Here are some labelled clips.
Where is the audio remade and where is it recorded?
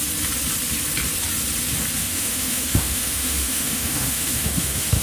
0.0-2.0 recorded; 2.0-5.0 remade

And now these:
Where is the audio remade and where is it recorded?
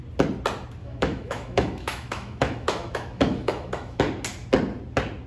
0.0-0.8 recorded; 0.8-4.0 remade; 4.0-5.3 recorded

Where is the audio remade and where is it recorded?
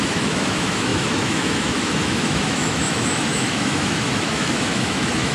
0.0-5.3 remade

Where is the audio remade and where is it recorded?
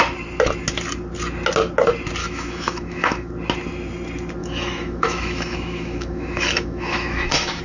0.0-2.2 recorded; 2.2-3.3 remade; 3.3-4.4 recorded; 4.4-7.6 remade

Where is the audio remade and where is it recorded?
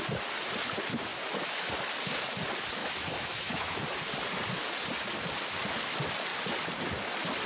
0.0-1.1 recorded; 1.1-1.7 remade; 1.7-2.8 recorded; 2.8-3.8 remade; 3.8-7.5 recorded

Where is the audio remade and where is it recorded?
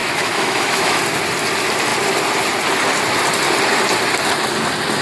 0.0-1.0 remade; 1.0-5.0 recorded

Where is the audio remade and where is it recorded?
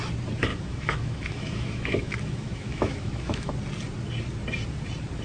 0.0-0.5 recorded; 0.5-3.5 remade; 3.5-5.2 recorded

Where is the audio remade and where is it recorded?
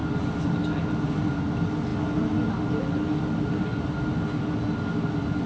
0.0-5.5 recorded